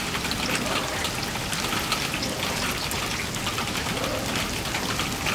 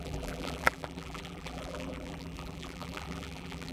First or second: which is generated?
second